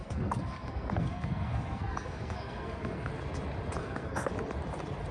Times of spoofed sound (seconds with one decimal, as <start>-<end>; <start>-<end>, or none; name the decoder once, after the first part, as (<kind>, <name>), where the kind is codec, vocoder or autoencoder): 0.0-3.1 (codec, SNAC); 3.8-4.3